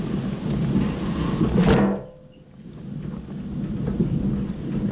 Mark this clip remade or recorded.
recorded